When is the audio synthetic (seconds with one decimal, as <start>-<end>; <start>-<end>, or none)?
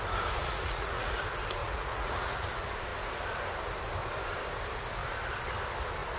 0.4-1.2; 1.6-2.5